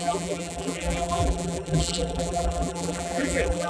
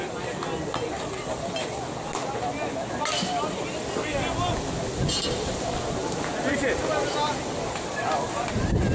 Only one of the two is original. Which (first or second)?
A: second